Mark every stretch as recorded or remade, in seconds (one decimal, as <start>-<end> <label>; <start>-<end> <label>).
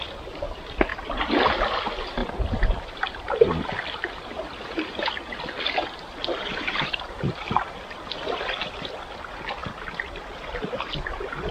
0.0-0.9 recorded; 0.9-1.6 remade; 1.6-2.2 recorded; 2.2-5.1 remade; 5.1-6.4 recorded; 6.4-7.6 remade; 7.6-9.6 recorded; 9.6-11.5 remade